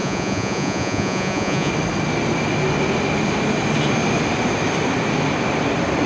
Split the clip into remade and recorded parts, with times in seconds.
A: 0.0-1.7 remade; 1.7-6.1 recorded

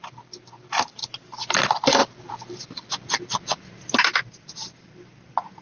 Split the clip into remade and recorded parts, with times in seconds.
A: 0.0-5.6 recorded

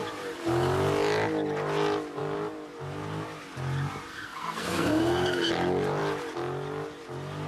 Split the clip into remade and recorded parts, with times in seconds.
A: 0.0-4.1 recorded; 4.1-5.5 remade; 5.5-7.5 recorded

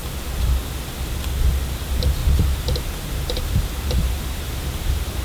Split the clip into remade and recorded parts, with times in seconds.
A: 0.0-2.2 recorded; 2.2-5.2 remade

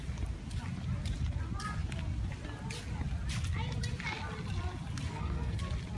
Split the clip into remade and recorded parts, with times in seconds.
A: 0.0-5.1 recorded; 5.1-5.6 remade; 5.6-6.0 recorded

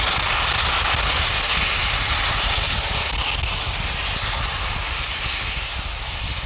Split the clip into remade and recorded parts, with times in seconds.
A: 0.0-6.5 recorded

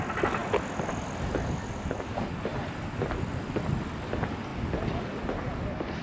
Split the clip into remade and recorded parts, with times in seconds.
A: 0.0-0.4 recorded; 0.4-1.6 remade; 1.6-4.5 recorded; 4.5-5.6 remade; 5.6-6.0 recorded

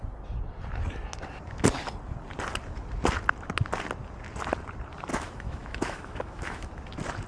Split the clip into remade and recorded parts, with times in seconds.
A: 0.0-5.1 recorded; 5.1-6.7 remade; 6.7-7.3 recorded